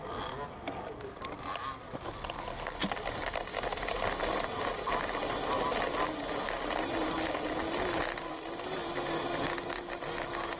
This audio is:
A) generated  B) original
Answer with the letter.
B